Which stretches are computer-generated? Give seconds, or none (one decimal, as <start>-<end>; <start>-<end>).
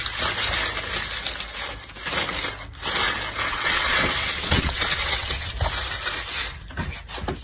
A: 3.5-5.5